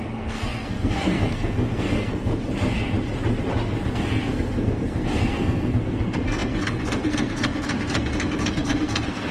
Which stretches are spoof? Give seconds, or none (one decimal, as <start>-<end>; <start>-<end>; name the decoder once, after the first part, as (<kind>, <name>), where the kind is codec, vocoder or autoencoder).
0.0-2.3 (codec, SNAC); 3.9-9.3